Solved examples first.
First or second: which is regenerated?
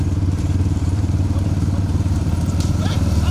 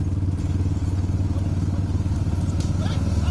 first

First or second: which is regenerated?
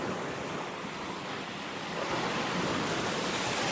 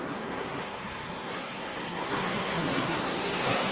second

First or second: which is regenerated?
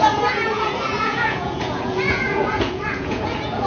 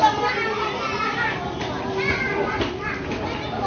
first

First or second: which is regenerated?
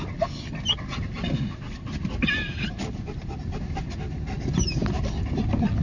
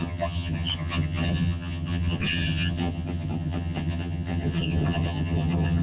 second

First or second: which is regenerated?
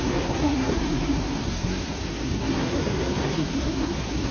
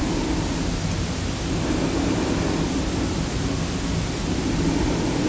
first